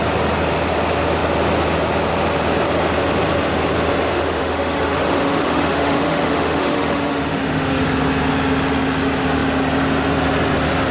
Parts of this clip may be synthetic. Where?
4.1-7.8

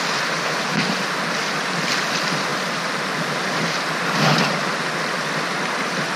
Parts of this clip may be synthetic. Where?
none

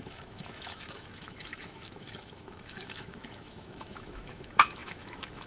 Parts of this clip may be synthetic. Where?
0.0-5.5

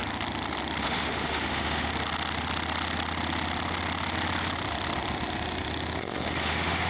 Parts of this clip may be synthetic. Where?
0.8-1.9; 6.0-6.9

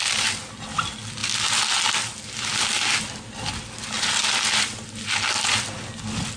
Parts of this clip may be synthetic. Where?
none

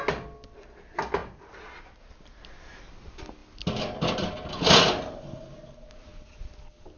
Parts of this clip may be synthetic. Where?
none

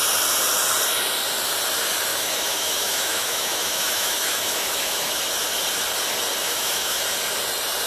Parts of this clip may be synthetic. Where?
2.1-5.2; 6.4-7.0